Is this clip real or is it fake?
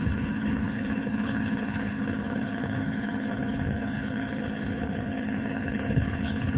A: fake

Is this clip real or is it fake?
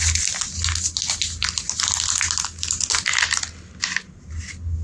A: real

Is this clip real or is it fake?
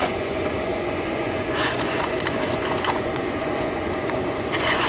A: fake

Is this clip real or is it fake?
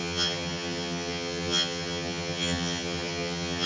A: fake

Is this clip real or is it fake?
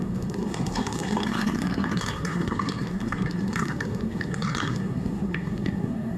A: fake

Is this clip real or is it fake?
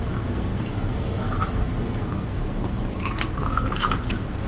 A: fake